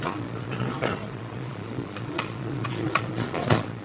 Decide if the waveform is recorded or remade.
remade